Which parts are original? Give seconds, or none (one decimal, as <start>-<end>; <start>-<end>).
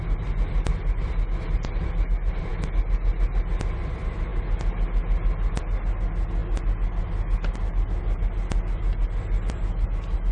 0.0-10.3